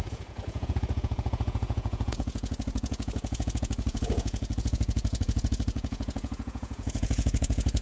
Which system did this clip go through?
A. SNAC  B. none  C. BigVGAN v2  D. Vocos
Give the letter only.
D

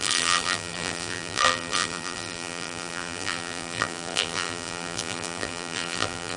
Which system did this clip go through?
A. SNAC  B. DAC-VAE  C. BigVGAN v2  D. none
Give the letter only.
C